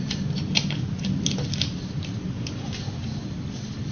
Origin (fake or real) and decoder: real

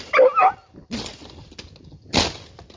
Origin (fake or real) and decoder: real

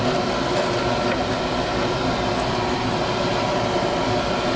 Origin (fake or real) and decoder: real